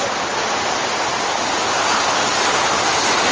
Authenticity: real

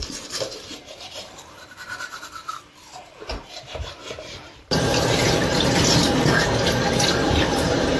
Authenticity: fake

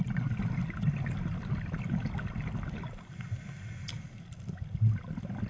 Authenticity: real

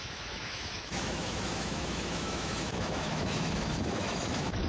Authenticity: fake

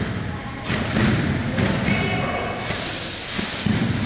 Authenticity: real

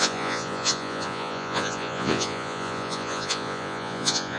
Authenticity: fake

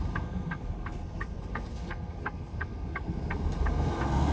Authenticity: fake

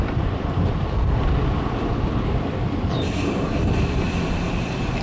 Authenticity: fake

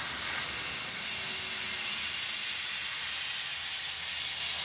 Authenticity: real